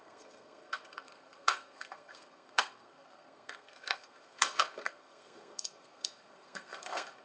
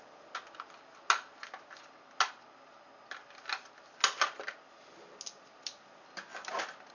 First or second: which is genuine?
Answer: second